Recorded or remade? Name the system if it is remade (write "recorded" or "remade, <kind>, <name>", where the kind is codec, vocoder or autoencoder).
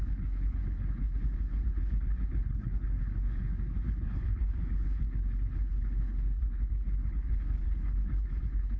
remade, codec, HILCodec